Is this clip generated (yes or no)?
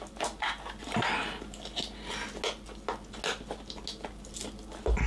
no